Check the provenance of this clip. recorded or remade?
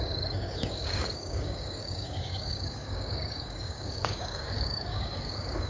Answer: remade